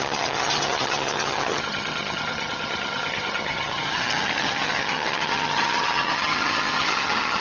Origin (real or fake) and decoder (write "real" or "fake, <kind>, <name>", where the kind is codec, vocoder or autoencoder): fake, vocoder, HiFi-GAN